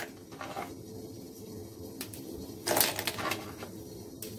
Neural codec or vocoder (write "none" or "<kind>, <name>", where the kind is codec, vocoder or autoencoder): none